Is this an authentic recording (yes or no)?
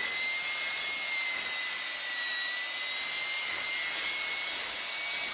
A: yes